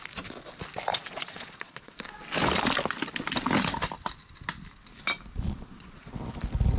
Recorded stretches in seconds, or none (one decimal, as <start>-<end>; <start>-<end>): 0.0-0.9; 2.0-5.3; 6.1-6.8